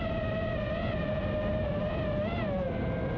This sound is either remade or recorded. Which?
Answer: recorded